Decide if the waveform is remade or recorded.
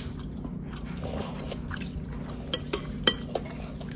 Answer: recorded